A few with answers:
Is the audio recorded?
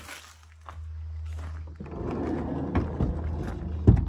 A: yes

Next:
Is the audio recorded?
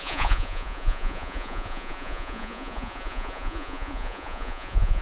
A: no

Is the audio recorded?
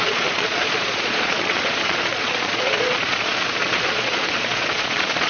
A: no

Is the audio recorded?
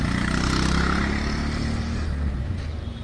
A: yes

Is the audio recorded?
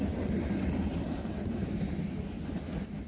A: yes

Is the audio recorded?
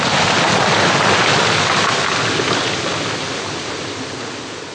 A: yes